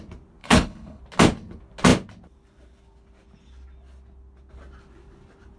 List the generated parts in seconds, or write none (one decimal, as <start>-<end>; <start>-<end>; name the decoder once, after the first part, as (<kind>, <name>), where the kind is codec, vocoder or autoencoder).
0.4-1.0 (codec, HILCodec)